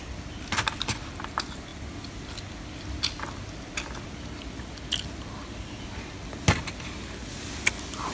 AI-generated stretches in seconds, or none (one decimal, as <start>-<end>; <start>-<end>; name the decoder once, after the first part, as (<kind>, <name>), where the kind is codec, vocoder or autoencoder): none